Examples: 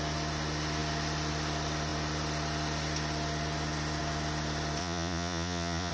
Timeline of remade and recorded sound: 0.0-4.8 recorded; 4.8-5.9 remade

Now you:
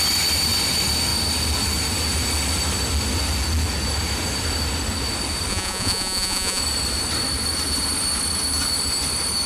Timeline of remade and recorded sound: 0.0-5.5 recorded; 5.5-6.6 remade; 6.6-9.5 recorded

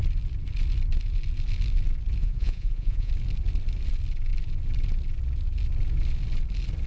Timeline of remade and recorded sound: 0.0-2.2 recorded; 2.2-3.1 remade; 3.1-6.9 recorded

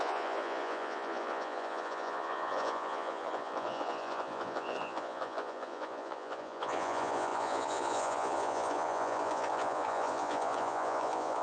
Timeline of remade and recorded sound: 0.0-11.4 remade

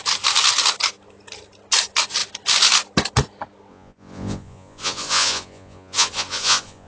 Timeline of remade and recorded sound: 0.0-3.7 recorded; 3.7-6.9 remade

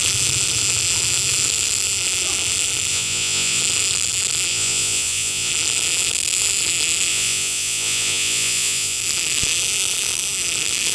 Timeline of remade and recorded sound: 0.0-2.9 recorded; 2.9-3.6 remade; 3.6-4.5 recorded; 4.5-5.5 remade; 5.5-7.1 recorded; 7.1-9.0 remade; 9.0-10.9 recorded

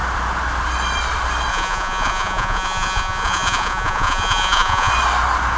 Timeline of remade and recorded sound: 0.0-1.5 recorded; 1.5-4.9 remade; 4.9-5.6 recorded